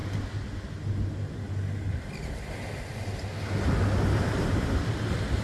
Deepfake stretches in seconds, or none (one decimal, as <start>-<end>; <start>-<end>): none